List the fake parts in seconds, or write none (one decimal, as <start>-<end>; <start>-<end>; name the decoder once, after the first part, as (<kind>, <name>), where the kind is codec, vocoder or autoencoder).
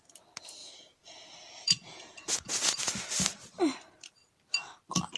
0.6-2.8 (vocoder, Vocos)